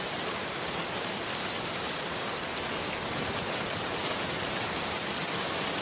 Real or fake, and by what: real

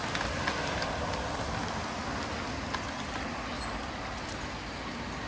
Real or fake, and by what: real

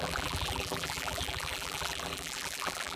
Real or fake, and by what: fake, vocoder, BigVGAN v2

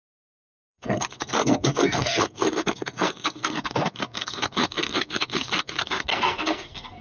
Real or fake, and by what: fake, codec, SNAC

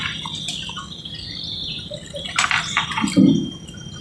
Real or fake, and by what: real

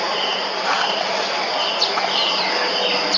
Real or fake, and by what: real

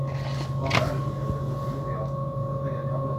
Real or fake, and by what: real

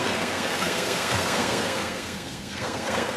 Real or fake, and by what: fake, codec, SNAC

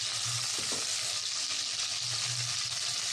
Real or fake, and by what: real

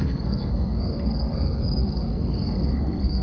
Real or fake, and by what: fake, codec, SNAC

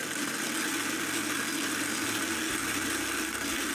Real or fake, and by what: real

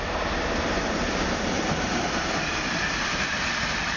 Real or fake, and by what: real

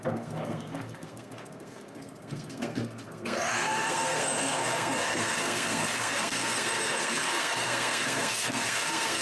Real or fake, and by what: fake, codec, SNAC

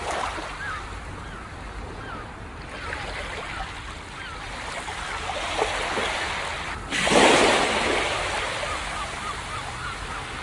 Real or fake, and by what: real